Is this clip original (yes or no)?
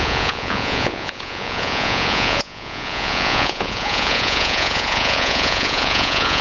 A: no